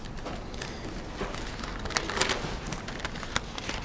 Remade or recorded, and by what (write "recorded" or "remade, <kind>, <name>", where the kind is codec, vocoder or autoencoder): recorded